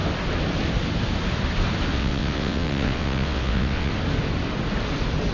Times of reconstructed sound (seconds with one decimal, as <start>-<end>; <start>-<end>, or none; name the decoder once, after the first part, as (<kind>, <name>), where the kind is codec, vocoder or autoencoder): 1.9-3.9 (vocoder, WaveNeXt)